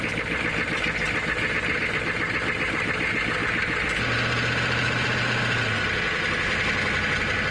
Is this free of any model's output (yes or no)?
yes